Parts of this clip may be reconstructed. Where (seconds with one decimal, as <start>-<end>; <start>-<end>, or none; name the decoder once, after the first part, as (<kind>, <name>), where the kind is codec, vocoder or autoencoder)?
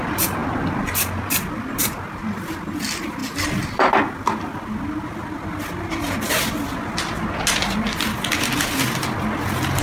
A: 0.4-1.9 (vocoder, BigVGAN v2)